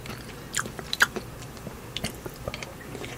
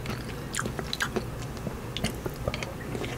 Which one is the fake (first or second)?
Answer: first